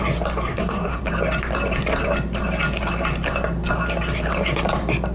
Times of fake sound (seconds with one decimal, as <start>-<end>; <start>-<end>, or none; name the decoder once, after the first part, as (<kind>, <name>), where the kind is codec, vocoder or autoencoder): 0.5-1.0 (codec, SNAC)